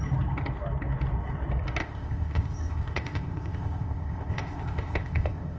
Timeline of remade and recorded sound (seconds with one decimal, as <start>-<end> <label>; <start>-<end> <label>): 0.0-1.8 recorded; 1.8-5.6 remade